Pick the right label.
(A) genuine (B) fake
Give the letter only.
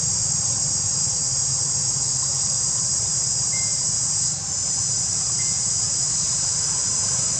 B